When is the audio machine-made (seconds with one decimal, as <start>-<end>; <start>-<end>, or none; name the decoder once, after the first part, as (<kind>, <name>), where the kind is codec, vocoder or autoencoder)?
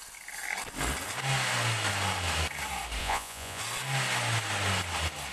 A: 3.0-3.6 (vocoder, Vocos)